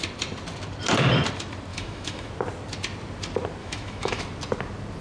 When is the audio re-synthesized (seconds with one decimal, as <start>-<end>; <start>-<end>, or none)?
1.7-2.3; 3.6-4.2